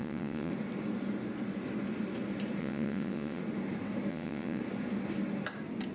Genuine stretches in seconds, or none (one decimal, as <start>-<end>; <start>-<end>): 0.5-2.6; 3.4-4.1; 4.6-5.9